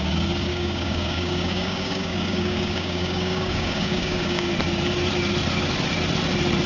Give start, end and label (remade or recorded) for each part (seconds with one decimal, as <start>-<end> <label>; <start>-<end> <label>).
0.0-0.5 recorded; 0.5-4.5 remade; 4.5-6.7 recorded